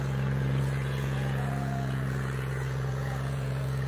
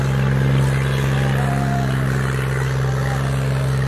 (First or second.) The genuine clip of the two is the second